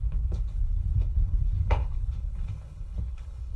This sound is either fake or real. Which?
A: fake